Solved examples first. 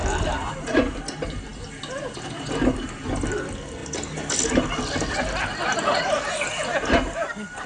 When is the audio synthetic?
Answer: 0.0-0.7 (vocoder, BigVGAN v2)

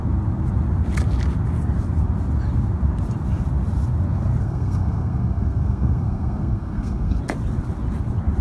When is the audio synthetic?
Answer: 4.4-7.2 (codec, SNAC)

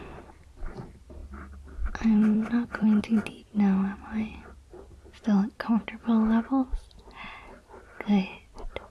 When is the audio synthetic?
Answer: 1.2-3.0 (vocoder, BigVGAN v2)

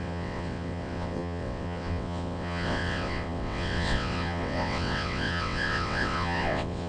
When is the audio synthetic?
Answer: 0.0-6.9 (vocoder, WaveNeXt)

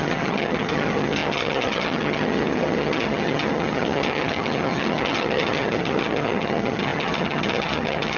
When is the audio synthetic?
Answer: 0.0-8.2 (vocoder, HiFi-GAN)

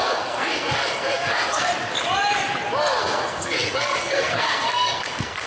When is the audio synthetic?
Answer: 0.0-1.7 (codec, SNAC); 3.0-5.5

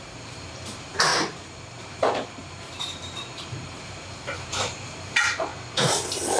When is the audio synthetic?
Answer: 0.0-1.1 (vocoder, BigVGAN v2); 1.8-5.5